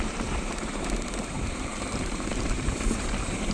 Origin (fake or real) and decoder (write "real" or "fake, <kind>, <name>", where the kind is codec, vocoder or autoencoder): fake, vocoder, BigVGAN v2